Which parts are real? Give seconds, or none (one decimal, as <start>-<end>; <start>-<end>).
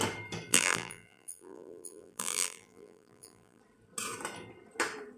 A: 0.0-0.5; 3.6-5.2